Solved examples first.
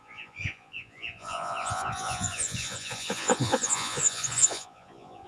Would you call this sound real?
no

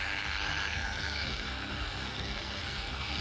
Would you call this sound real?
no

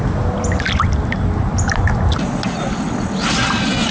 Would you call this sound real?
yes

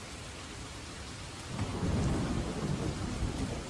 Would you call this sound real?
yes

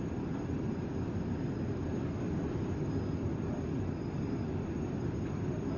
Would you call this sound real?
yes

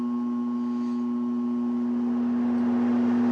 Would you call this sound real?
yes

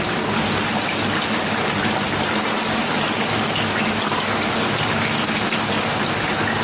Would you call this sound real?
yes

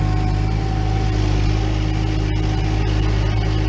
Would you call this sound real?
yes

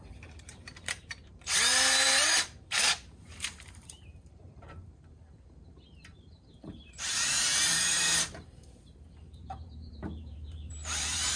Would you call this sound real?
no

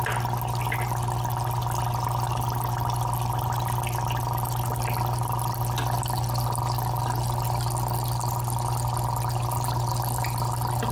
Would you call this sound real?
yes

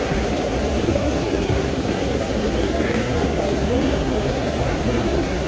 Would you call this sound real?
no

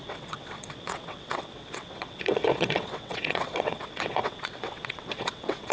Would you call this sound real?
no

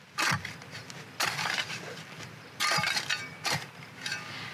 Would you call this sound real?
yes